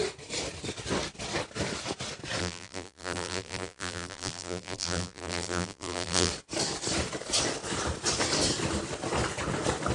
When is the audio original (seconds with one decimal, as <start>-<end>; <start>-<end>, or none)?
0.0-2.4; 6.3-9.9